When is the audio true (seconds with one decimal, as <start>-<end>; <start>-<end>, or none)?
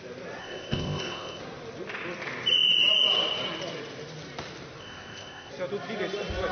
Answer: 0.0-0.4; 1.4-4.8; 5.5-6.5